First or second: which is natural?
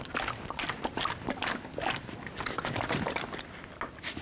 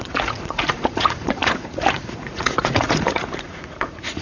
first